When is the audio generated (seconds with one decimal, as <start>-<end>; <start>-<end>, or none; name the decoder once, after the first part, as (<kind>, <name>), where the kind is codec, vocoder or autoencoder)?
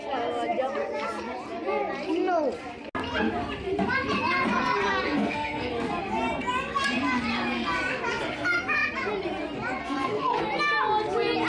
4.6-5.7 (codec, SNAC); 9.8-10.4